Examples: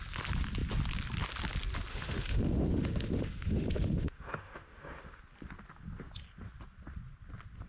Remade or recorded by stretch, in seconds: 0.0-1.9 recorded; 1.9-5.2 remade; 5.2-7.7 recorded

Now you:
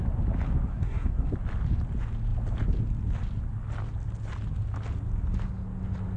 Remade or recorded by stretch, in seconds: 0.0-0.7 recorded; 0.7-1.3 remade; 1.3-6.2 recorded

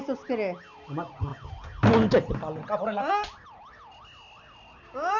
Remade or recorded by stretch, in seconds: 0.0-5.2 recorded

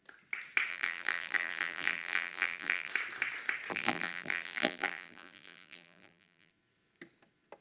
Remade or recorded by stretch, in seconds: 0.0-0.7 recorded; 0.7-2.9 remade; 2.9-3.7 recorded; 3.7-6.5 remade; 6.5-7.6 recorded

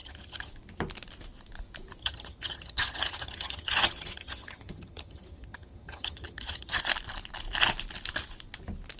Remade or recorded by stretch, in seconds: 0.0-0.5 remade; 0.5-2.0 recorded; 2.0-6.8 remade; 6.8-9.0 recorded